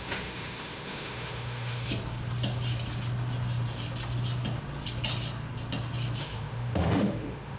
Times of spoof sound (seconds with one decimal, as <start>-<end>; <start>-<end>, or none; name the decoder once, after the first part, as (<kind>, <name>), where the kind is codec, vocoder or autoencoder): 0.0-1.9 (autoencoder, DAC-VAE); 6.2-7.6